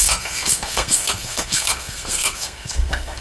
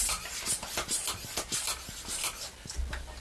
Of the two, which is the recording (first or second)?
second